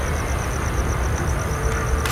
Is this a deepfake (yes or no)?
no